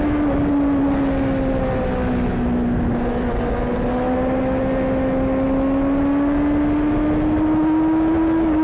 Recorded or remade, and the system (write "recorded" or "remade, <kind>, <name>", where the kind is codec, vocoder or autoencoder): recorded